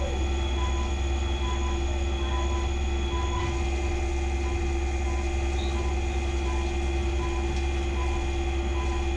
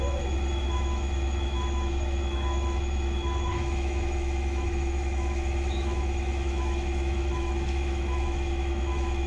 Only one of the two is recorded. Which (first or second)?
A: first